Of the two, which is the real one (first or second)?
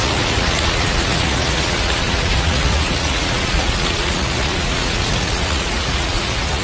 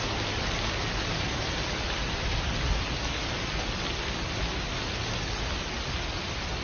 second